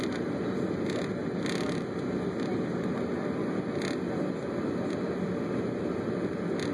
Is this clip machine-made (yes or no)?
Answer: no